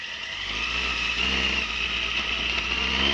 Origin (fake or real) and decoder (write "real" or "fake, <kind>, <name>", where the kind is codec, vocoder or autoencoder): real